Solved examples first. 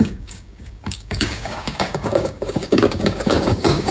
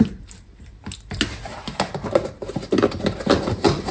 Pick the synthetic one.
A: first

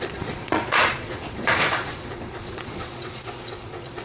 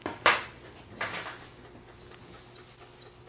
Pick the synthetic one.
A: first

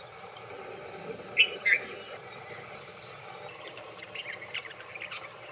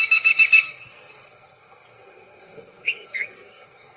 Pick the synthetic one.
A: second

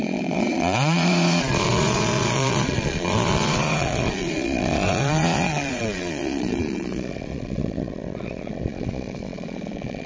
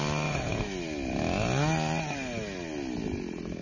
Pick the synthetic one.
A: first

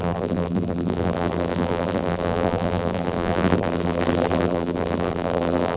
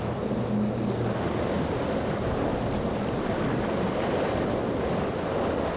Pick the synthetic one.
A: first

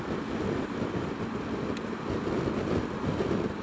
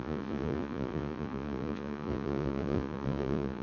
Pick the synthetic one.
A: second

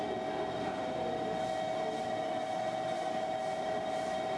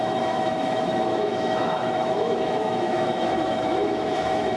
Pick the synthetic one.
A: second